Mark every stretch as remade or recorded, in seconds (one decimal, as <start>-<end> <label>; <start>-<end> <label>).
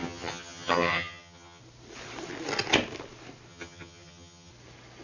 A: 0.0-1.6 remade; 1.6-3.5 recorded; 3.5-4.5 remade; 4.5-5.0 recorded